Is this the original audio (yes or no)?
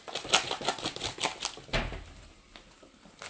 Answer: yes